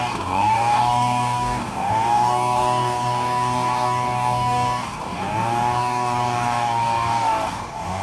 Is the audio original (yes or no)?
no